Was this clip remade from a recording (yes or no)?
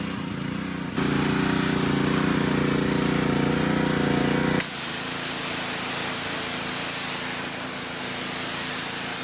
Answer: no